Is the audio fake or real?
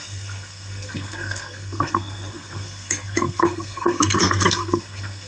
fake